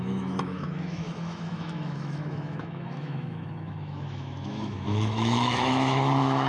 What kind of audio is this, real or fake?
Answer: fake